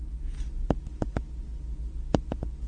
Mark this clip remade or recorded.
recorded